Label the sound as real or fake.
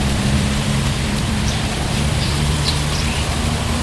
fake